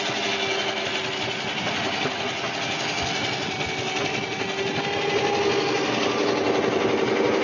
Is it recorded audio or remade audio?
recorded